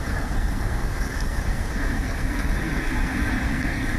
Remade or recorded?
remade